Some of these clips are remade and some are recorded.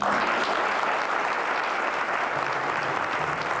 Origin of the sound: recorded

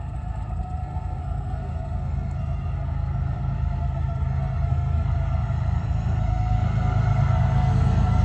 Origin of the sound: remade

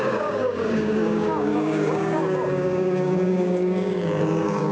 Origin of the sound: remade